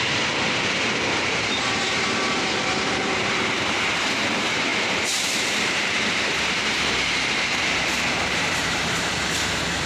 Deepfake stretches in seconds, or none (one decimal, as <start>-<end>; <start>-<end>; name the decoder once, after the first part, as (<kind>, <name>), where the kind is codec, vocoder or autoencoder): 0.0-9.9 (vocoder, BigVGAN v2)